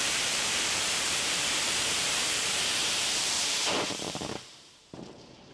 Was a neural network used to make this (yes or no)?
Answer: yes